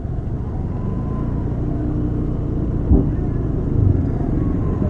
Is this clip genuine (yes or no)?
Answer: yes